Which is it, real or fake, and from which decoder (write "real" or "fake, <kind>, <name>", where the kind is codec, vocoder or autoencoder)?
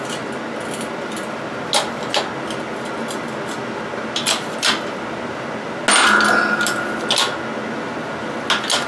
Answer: real